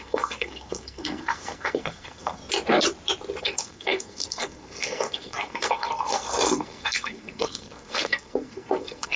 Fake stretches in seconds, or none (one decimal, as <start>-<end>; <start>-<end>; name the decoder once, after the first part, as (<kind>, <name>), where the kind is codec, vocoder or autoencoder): 0.0-2.4 (codec, SNAC); 3.4-9.2